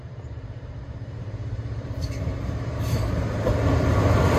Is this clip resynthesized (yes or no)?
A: yes